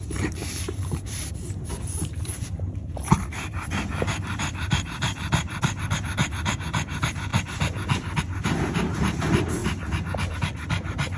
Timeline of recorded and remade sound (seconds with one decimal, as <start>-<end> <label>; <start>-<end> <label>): 0.0-7.3 remade; 7.3-8.2 recorded; 8.2-9.6 remade; 9.6-10.3 recorded; 10.3-11.2 remade

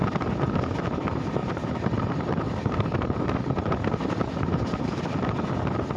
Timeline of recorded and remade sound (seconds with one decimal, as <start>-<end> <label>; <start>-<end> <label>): 0.0-1.4 recorded; 1.4-5.0 remade; 5.0-6.0 recorded

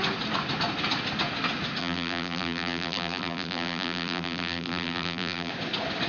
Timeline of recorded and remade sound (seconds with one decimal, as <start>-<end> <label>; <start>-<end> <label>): 0.0-1.8 recorded; 1.8-5.5 remade; 5.5-6.1 recorded

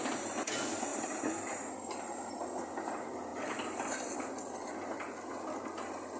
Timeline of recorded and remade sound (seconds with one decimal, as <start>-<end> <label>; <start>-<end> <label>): 0.0-0.9 recorded; 0.9-1.7 remade; 1.7-6.2 recorded

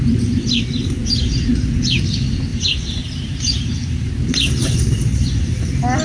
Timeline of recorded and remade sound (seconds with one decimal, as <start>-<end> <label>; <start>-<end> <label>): 0.0-2.5 recorded; 2.5-4.1 remade; 4.1-6.0 recorded

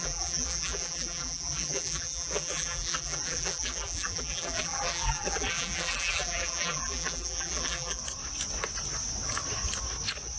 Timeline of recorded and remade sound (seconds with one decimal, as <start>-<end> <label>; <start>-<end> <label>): 0.0-8.0 remade; 8.0-10.4 recorded

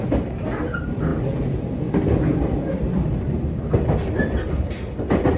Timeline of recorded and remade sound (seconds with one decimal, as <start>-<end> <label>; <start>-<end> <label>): 0.0-5.4 recorded